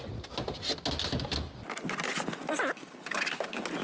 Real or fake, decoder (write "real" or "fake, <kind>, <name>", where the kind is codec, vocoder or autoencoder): real